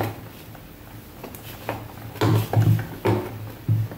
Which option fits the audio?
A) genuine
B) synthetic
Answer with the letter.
A